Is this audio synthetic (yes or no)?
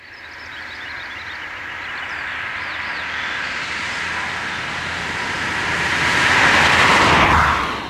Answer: no